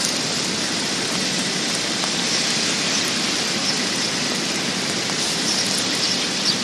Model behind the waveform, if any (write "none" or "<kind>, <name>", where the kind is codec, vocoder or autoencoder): none